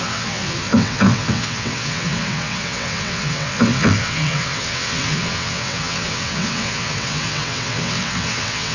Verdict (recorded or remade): remade